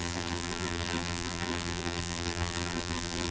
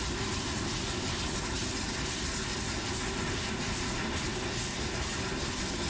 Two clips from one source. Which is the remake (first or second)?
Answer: first